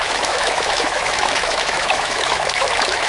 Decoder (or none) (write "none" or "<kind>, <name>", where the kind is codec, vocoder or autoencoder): autoencoder, DAC-VAE